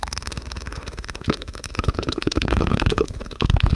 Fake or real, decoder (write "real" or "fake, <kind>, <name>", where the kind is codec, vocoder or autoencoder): fake, autoencoder, DAC-VAE